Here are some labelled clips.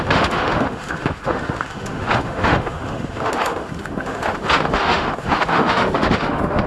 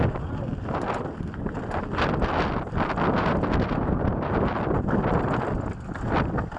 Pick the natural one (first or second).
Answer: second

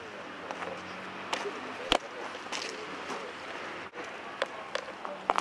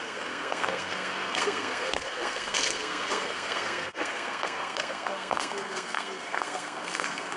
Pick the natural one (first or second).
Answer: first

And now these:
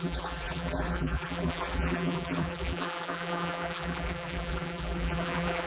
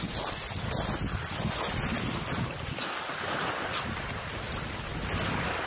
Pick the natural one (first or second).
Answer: second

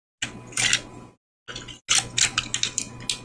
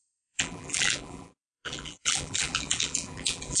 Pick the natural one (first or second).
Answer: first